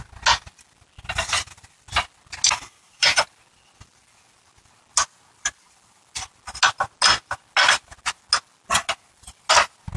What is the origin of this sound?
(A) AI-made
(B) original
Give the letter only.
B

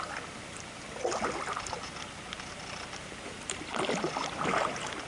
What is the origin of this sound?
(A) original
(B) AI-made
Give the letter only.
A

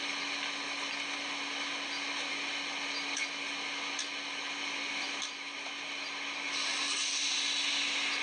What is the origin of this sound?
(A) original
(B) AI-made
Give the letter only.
A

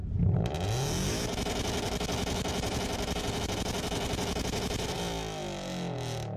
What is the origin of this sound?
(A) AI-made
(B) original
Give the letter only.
B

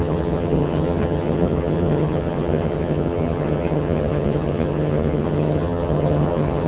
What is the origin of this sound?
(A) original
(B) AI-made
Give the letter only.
B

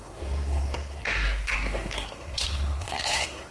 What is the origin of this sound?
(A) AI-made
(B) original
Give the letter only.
A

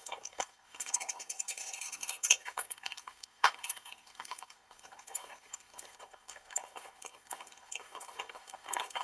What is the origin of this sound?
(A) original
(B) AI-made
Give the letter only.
B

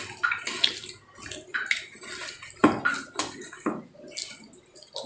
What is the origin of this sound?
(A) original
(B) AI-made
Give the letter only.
A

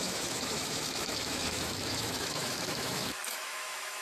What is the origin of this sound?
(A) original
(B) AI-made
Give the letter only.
B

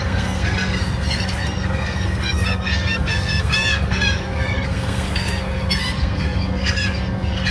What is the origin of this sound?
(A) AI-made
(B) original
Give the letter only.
A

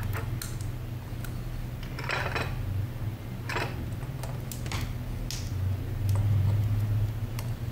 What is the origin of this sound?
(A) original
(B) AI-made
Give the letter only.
A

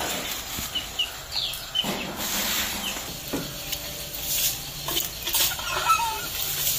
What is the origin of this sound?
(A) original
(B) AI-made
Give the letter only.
A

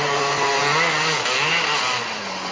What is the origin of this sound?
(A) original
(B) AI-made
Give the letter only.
A